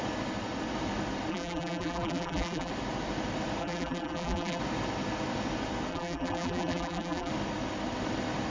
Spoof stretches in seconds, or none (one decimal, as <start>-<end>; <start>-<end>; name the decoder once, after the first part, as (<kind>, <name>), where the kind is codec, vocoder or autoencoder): 1.3-2.7 (vocoder, BigVGAN v2); 3.6-4.6; 5.9-7.3